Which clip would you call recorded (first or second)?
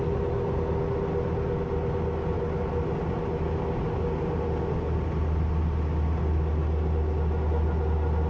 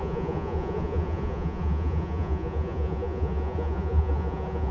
first